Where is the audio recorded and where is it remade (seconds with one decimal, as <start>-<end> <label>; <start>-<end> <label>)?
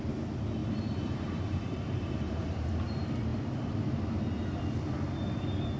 0.0-0.6 recorded; 0.6-2.7 remade; 2.7-5.8 recorded